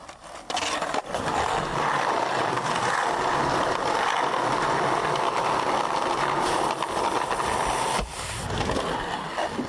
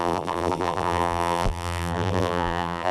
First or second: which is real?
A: first